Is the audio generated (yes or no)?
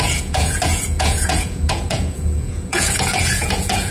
yes